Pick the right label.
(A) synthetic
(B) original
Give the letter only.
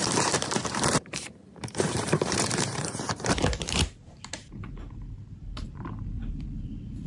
A